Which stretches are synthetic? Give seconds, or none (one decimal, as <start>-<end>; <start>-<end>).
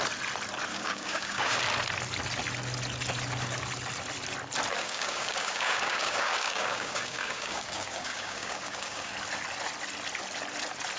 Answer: 0.7-1.6; 4.8-9.1